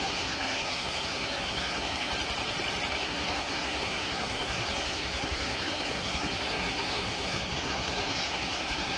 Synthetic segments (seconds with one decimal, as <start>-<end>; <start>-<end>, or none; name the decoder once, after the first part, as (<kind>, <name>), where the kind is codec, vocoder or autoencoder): 0.0-2.1 (codec, SNAC); 2.9-9.0